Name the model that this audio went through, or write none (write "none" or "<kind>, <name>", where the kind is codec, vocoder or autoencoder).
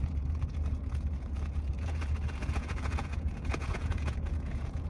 vocoder, Vocos